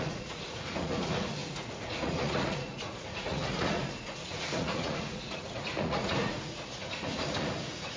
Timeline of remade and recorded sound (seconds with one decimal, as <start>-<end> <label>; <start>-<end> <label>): 0.0-8.0 remade